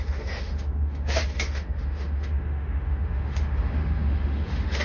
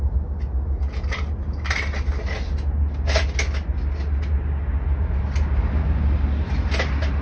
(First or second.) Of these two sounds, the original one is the second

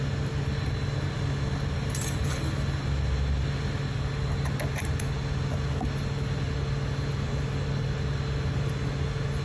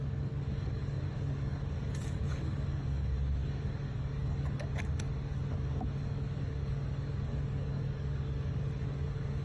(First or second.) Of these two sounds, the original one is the first